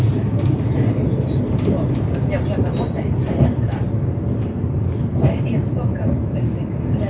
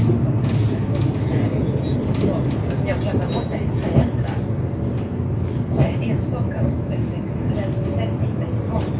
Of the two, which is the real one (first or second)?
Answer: second